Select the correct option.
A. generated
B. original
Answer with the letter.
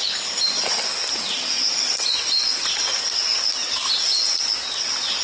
B